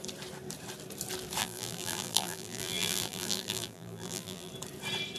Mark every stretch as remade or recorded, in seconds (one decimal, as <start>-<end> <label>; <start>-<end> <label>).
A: 0.0-1.4 recorded; 1.4-4.5 remade; 4.5-5.2 recorded